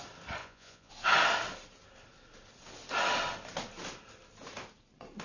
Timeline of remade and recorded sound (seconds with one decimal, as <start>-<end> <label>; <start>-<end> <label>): 0.0-0.4 recorded; 0.4-0.9 remade; 0.9-5.2 recorded